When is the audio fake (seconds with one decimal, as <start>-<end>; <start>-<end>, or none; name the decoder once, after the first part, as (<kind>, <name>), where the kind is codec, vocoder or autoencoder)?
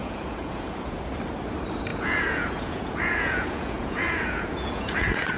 0.0-1.0 (vocoder, Vocos); 1.9-5.4